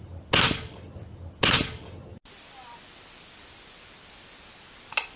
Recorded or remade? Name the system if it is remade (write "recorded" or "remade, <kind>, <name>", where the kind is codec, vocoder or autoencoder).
recorded